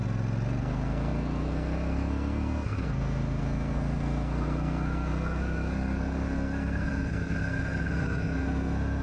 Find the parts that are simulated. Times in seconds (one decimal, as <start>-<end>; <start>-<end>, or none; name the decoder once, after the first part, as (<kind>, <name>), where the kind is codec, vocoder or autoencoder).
0.6-9.0 (codec, SNAC)